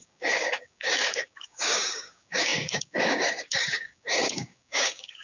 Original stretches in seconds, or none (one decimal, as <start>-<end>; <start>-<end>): none

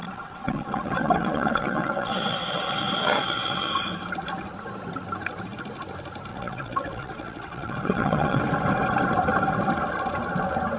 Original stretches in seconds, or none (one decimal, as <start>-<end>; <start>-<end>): 3.7-6.3; 8.4-10.8

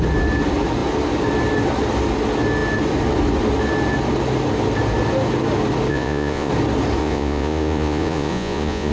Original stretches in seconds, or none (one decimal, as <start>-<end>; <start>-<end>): 0.0-5.9; 6.5-7.0

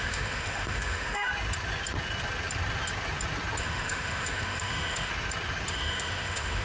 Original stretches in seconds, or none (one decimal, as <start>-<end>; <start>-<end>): 1.3-3.6; 5.1-5.7

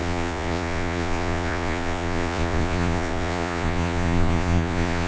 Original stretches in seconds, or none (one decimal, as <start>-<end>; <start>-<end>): none